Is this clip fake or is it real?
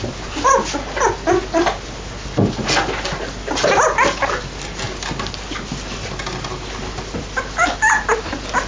real